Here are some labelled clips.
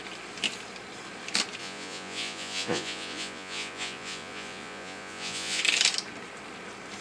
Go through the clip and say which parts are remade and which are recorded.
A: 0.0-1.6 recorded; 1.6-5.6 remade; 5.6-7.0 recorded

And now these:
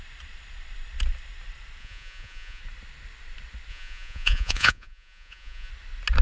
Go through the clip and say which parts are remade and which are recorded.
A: 0.0-1.8 recorded; 1.8-2.6 remade; 2.6-3.7 recorded; 3.7-5.7 remade; 5.7-6.2 recorded